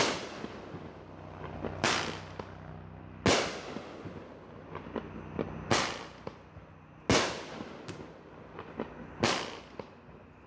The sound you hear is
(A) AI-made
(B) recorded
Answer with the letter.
B